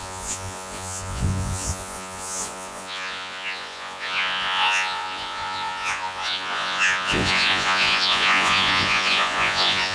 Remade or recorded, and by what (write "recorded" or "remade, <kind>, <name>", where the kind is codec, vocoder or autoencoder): remade, vocoder, Vocos